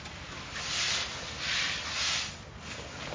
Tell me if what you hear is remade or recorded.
recorded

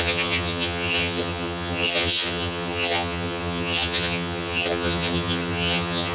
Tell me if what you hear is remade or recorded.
remade